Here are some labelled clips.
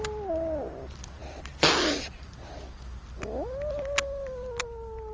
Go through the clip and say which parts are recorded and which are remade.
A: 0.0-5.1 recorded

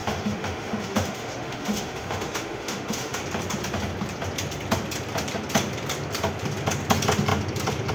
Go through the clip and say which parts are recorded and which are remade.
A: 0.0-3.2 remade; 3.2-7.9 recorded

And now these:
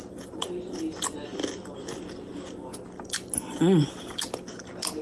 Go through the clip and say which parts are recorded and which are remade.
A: 0.0-5.0 recorded

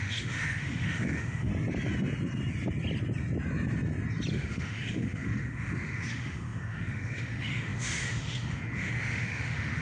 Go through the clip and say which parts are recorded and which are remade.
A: 0.0-1.5 remade; 1.5-4.3 recorded; 4.3-9.8 remade

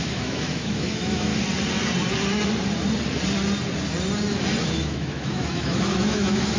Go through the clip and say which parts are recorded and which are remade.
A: 0.0-1.3 remade; 1.3-4.6 recorded; 4.6-6.6 remade

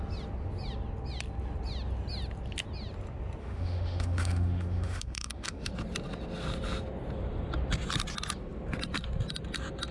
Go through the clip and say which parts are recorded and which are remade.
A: 0.0-3.4 recorded; 3.4-5.7 remade; 5.7-9.9 recorded

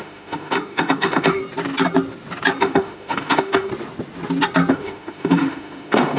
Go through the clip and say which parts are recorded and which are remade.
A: 0.0-1.4 remade; 1.4-2.6 recorded; 2.6-3.7 remade; 3.7-4.7 recorded; 4.7-6.2 remade

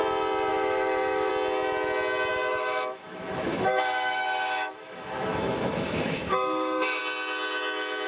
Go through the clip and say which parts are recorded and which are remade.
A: 0.0-0.5 recorded; 0.5-1.3 remade; 1.3-2.3 recorded; 2.3-7.0 remade; 7.0-8.1 recorded